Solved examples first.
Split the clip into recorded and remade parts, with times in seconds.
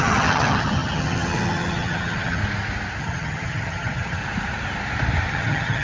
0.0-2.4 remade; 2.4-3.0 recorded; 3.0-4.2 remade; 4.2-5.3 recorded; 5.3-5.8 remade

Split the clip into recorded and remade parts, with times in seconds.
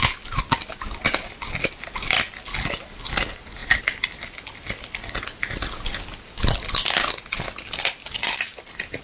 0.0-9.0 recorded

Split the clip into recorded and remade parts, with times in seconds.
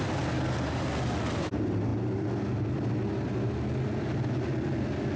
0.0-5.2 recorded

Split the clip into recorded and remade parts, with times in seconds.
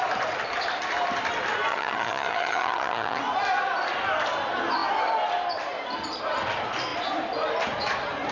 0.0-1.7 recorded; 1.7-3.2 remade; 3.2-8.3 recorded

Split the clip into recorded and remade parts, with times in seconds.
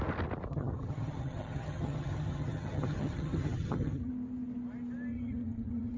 0.0-0.5 recorded; 0.5-4.1 remade; 4.1-5.1 recorded; 5.1-6.0 remade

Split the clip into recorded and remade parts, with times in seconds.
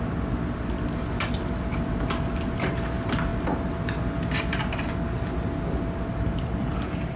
0.0-7.2 recorded